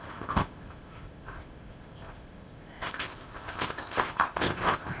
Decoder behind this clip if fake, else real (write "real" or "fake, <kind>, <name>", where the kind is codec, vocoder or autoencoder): fake, codec, ZipCodec